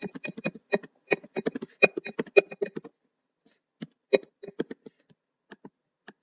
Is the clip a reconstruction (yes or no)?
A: no